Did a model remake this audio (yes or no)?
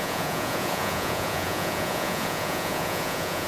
yes